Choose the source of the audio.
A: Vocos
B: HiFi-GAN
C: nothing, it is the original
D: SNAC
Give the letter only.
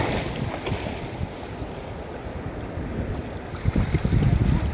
C